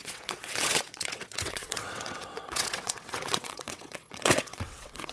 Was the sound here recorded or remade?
remade